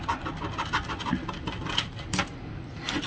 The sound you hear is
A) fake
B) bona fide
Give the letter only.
B